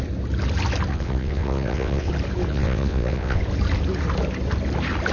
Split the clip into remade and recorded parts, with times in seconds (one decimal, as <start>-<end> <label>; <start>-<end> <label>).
0.0-0.9 recorded; 0.9-2.1 remade; 2.1-2.5 recorded; 2.5-3.4 remade; 3.4-5.1 recorded